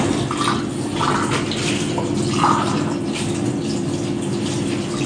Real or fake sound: real